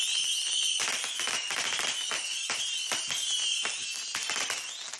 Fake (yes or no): no